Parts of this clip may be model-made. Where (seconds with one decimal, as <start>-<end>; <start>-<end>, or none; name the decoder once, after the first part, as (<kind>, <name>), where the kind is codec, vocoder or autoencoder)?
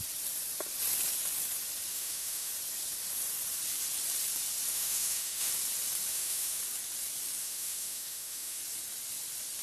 1.9-2.5 (autoencoder, DAC-VAE); 4.7-5.5; 6.1-6.6; 7.4-8.6